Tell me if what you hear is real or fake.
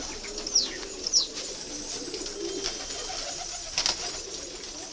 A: real